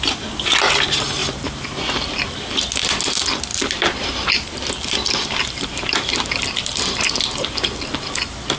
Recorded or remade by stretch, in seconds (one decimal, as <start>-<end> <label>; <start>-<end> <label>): 0.0-1.2 recorded; 1.2-1.8 remade; 1.8-3.5 recorded; 3.5-6.3 remade; 6.3-8.6 recorded